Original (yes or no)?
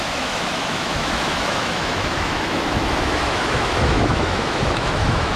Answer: no